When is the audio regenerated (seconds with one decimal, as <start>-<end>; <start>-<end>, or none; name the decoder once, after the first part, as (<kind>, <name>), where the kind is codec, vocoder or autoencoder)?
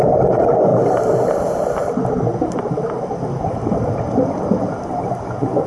none